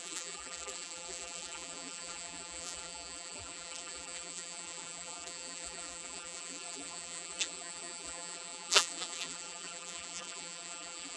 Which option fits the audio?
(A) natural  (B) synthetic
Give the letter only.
B